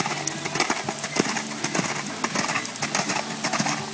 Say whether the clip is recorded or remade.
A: recorded